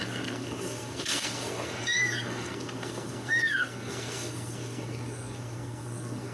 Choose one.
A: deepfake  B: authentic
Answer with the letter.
A